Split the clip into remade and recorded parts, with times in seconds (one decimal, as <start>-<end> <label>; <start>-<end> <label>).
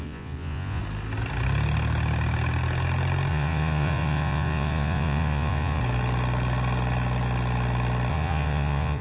0.0-0.8 remade; 0.8-3.3 recorded; 3.3-5.8 remade; 5.8-8.1 recorded; 8.1-9.0 remade